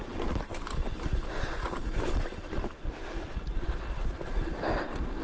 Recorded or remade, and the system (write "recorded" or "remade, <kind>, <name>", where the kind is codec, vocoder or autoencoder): recorded